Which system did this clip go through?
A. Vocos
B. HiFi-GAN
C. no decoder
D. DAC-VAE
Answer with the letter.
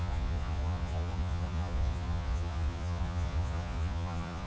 A